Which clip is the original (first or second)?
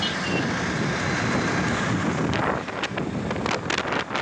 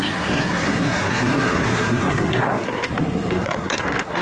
first